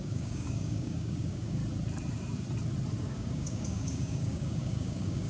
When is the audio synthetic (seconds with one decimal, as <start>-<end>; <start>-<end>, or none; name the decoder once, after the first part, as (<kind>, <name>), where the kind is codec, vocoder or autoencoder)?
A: 0.0-1.6 (codec, DAC); 3.0-5.3